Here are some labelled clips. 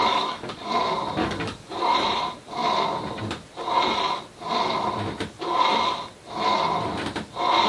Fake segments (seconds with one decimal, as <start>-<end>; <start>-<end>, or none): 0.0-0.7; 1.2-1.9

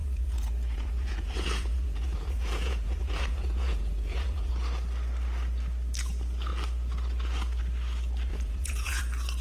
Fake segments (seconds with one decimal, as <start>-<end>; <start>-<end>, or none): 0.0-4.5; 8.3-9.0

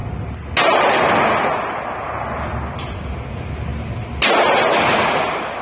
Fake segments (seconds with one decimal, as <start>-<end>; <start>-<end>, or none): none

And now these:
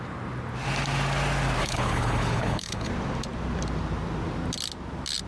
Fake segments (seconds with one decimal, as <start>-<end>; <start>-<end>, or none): 1.6-2.9

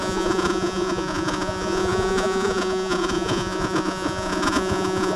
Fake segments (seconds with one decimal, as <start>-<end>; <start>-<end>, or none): 0.0-5.2

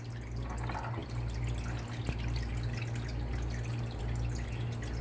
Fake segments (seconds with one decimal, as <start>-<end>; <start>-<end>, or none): none

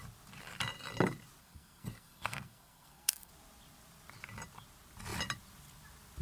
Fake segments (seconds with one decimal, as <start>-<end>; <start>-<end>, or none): 1.4-3.3